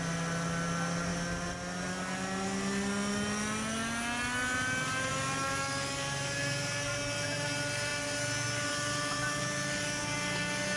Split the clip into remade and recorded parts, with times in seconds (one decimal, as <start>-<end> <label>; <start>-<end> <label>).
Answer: 0.0-10.8 recorded